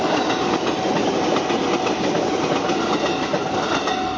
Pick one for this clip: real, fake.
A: real